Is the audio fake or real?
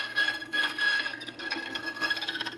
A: fake